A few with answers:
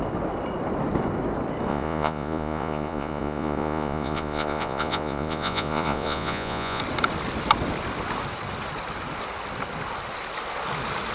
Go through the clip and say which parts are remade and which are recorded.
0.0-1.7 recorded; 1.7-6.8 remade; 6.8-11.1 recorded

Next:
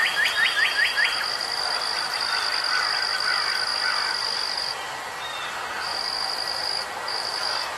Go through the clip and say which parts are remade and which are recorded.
0.0-7.8 recorded